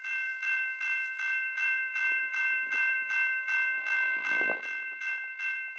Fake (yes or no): yes